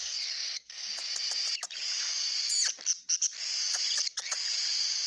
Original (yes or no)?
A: yes